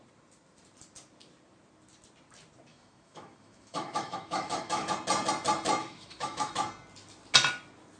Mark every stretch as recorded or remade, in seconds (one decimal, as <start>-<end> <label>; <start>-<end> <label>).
0.0-2.7 recorded; 2.7-4.9 remade; 4.9-5.8 recorded; 5.8-6.5 remade; 6.5-8.0 recorded